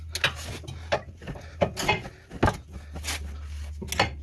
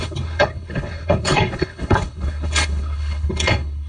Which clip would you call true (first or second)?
first